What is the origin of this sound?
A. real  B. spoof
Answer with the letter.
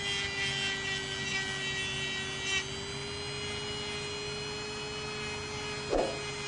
A